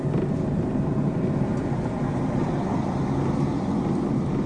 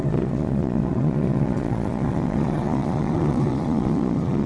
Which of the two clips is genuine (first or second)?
first